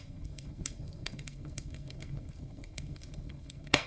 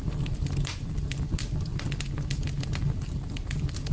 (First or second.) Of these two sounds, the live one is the second